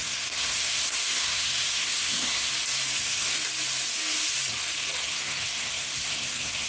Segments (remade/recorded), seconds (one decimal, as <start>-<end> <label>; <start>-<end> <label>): 0.0-2.5 remade; 2.5-3.0 recorded; 3.0-3.4 remade; 3.4-5.1 recorded; 5.1-6.7 remade